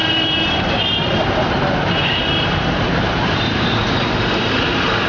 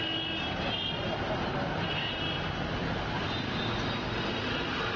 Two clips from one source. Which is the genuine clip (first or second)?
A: second